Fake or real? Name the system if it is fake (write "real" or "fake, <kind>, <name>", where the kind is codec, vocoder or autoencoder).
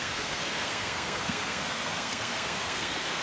fake, codec, SNAC